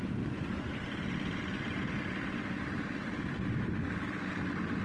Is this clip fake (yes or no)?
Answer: no